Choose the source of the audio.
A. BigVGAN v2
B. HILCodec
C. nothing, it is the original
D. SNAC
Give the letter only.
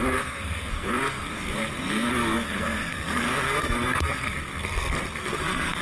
D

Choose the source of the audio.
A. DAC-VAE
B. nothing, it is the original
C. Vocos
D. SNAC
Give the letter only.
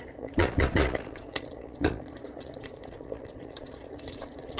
C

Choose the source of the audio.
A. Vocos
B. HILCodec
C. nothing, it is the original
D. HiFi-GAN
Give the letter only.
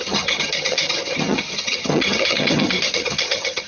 D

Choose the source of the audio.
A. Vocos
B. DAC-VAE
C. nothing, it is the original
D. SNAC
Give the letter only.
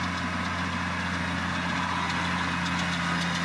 C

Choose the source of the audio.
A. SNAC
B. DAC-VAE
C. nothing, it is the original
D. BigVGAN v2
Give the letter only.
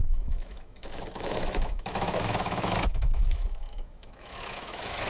B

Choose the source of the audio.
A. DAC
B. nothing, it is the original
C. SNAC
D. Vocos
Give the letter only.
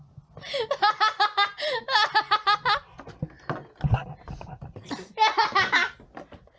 B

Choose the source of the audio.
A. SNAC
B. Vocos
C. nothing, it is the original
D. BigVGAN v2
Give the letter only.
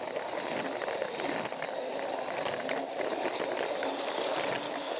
C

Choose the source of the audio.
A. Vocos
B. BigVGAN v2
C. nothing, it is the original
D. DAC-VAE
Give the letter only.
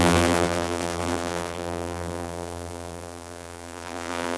B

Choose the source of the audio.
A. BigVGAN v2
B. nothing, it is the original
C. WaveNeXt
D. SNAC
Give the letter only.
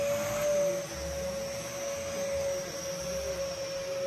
B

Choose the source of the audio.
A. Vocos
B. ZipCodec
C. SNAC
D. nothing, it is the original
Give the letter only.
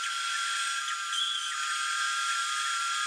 D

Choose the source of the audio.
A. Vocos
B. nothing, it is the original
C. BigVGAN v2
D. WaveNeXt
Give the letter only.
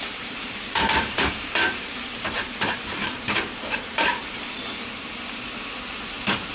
C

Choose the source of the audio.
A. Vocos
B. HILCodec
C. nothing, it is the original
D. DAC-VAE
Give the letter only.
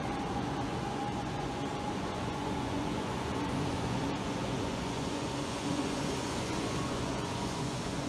A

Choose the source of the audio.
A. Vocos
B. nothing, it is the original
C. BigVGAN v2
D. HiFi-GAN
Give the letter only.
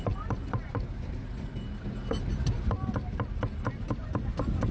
B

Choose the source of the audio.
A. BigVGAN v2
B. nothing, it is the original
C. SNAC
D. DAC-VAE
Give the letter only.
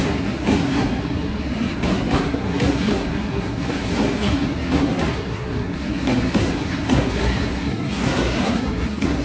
C